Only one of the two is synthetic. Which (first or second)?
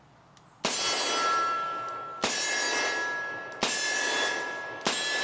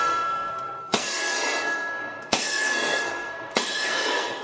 second